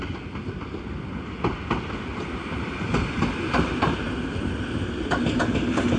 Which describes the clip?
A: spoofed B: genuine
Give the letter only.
B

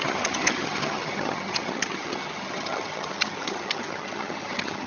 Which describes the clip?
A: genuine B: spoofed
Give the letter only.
B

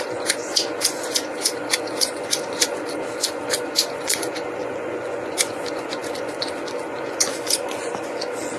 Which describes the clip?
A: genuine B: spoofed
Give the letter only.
B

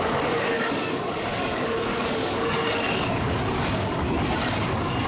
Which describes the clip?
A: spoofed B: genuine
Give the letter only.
A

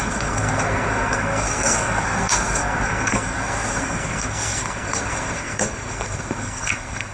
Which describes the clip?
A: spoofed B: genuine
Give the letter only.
A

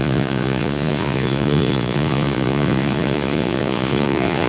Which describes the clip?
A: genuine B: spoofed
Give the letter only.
B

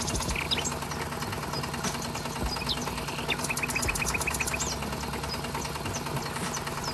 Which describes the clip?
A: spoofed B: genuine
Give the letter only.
B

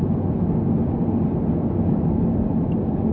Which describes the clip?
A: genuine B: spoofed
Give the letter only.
A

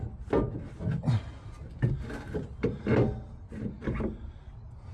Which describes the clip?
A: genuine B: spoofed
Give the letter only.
A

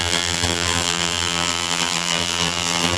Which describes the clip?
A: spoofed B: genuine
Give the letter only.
A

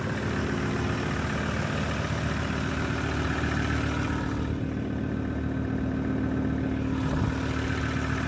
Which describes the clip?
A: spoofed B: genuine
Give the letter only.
B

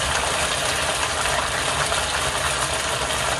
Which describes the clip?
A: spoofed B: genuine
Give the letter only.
B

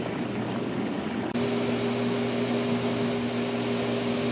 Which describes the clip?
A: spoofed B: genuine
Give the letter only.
B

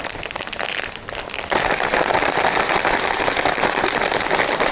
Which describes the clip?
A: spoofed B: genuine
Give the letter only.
A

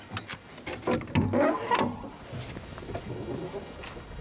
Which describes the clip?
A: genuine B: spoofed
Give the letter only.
A